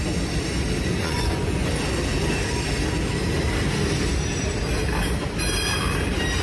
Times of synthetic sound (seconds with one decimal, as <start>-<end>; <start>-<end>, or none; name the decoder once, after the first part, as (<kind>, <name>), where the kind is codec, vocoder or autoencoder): 1.0-1.7 (vocoder, Vocos)